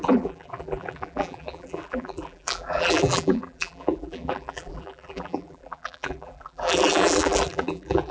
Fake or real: fake